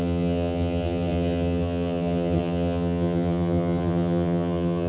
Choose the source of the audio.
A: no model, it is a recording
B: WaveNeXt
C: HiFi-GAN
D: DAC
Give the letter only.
C